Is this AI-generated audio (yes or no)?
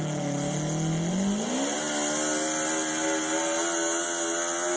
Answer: no